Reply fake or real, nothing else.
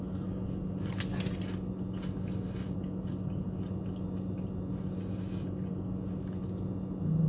real